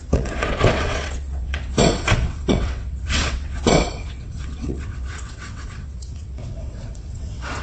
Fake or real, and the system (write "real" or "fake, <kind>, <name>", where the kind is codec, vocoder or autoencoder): fake, vocoder, WaveNeXt